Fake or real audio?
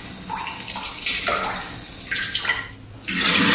real